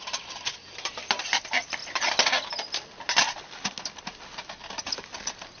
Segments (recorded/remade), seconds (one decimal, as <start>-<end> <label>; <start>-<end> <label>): 0.0-5.6 recorded